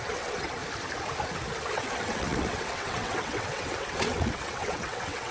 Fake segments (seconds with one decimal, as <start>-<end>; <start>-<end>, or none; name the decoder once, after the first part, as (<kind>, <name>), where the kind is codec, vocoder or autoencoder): 0.0-0.6 (vocoder, WaveNeXt); 1.7-5.3